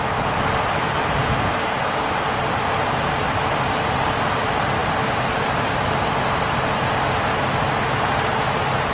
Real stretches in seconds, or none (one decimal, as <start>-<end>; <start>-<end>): 0.0-8.9